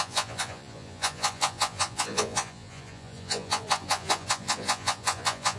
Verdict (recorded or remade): remade